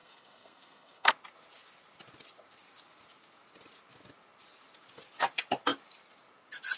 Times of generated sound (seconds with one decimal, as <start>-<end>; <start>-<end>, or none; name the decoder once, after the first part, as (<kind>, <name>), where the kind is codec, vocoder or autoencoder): 0.0-1.1 (codec, SNAC)